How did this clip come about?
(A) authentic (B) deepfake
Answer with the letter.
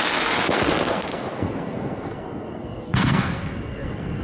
B